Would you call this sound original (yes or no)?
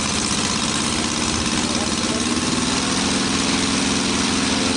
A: yes